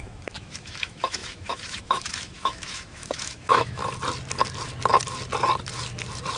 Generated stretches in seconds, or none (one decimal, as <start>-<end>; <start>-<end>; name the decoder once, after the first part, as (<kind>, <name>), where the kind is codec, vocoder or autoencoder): 0.0-3.8 (autoencoder, DAC-VAE)